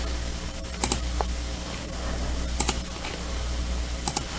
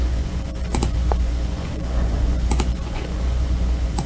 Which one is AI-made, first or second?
second